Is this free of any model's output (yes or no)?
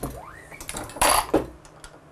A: yes